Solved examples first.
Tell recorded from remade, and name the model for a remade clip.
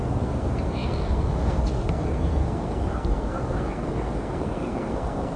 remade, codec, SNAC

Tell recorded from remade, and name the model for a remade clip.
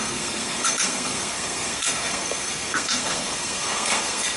remade, codec, SNAC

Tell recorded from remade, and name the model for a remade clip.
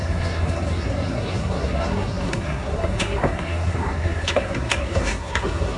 remade, codec, SNAC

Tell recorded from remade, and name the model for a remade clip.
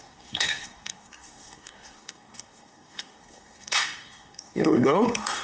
remade, codec, SNAC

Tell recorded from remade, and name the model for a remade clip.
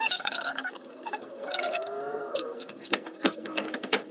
remade, codec, SNAC